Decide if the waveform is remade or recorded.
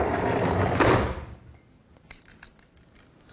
recorded